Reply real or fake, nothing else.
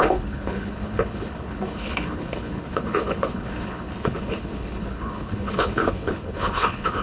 fake